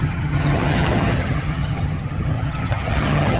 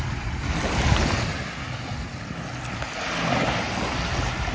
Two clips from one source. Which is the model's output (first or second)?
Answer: first